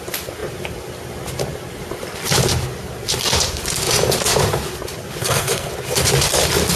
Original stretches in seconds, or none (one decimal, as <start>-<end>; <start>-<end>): 0.0-5.2; 5.7-6.8